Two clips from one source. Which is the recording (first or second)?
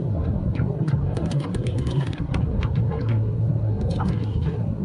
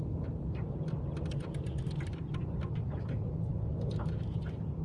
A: second